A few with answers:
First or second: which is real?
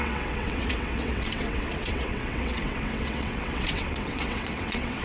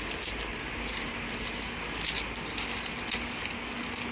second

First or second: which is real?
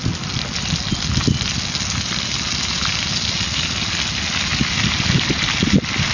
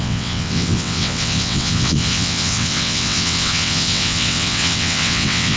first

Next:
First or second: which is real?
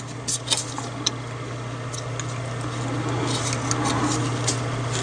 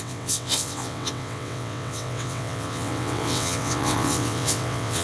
first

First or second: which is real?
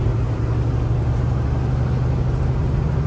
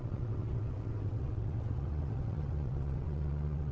first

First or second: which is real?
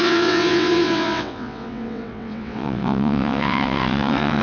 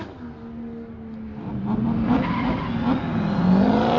second